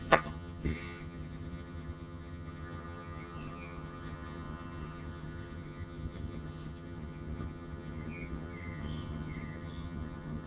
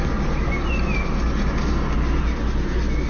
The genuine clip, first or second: second